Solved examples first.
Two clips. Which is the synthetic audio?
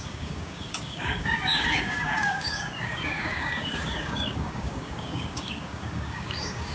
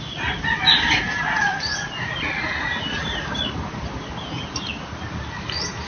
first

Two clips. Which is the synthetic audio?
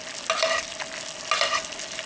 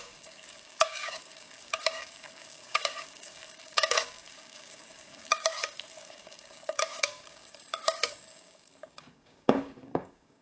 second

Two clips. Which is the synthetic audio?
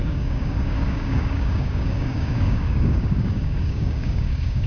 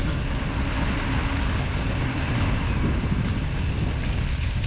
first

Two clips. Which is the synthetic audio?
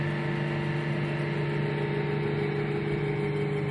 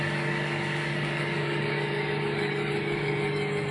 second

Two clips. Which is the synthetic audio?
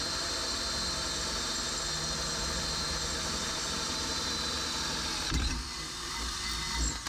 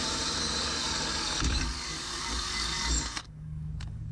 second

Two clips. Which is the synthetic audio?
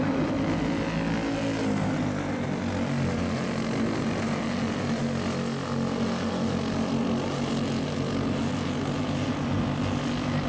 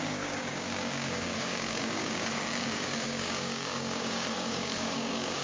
second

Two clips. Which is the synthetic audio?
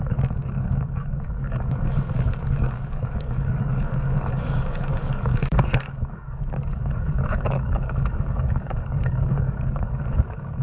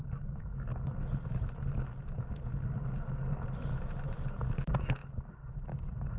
first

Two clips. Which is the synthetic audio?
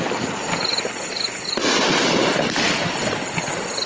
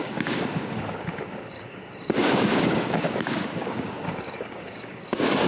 second